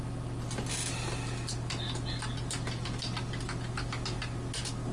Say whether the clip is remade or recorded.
recorded